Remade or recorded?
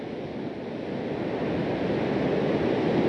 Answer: recorded